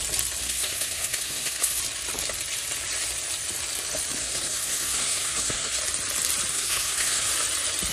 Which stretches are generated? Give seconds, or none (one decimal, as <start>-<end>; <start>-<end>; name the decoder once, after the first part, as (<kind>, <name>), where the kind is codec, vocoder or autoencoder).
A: 0.4-1.8 (codec, SNAC); 4.2-5.8; 6.5-7.3